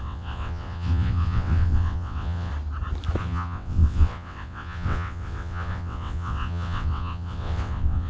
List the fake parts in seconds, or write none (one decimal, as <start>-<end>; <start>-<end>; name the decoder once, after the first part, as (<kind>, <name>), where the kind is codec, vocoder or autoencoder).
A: 0.0-2.5 (vocoder, WaveNeXt); 3.2-8.1